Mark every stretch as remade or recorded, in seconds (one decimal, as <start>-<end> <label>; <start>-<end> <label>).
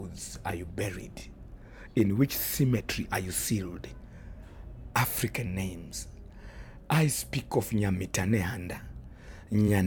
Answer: 0.0-1.2 remade; 1.2-2.8 recorded; 2.8-3.8 remade; 3.8-8.7 recorded; 8.7-9.9 remade